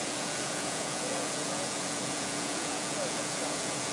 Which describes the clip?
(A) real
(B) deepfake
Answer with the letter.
B